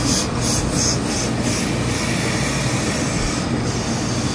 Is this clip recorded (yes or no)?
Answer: yes